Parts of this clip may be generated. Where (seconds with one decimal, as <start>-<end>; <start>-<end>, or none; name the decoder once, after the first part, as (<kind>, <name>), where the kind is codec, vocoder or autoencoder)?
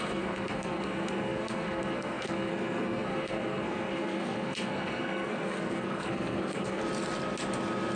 0.0-6.8 (codec, SNAC)